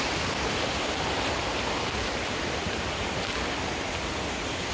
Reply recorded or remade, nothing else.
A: recorded